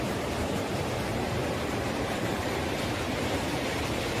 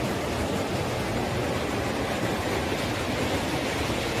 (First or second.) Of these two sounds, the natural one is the second